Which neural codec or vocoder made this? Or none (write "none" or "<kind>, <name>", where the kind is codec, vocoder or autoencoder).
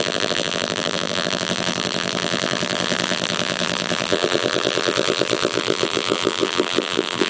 vocoder, BigVGAN v2